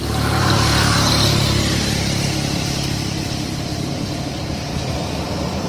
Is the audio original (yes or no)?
no